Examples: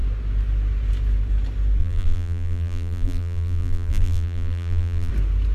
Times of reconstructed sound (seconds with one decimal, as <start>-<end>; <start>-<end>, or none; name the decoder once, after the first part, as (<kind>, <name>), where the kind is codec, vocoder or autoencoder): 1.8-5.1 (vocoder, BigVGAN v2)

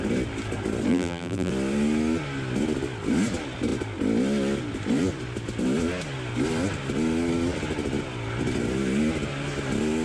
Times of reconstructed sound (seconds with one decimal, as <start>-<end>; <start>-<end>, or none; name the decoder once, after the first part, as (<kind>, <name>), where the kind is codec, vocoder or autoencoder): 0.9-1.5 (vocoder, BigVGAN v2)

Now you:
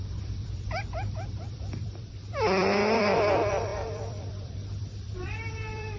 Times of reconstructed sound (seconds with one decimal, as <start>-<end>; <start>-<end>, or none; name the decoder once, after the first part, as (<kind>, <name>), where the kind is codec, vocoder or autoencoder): 0.0-6.0 (vocoder, BigVGAN v2)

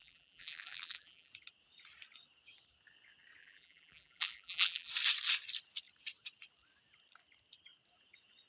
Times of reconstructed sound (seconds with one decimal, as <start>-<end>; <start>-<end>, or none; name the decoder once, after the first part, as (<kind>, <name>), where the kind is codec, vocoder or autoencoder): 0.0-1.3 (vocoder, BigVGAN v2); 3.4-4.9